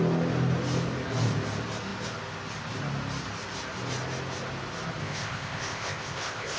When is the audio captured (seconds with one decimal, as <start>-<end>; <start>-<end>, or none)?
0.0-5.0